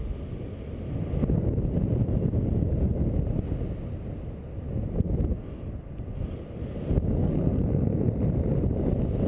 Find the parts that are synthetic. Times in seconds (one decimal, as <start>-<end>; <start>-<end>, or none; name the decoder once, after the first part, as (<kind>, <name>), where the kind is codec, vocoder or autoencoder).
7.2-8.1 (codec, SNAC)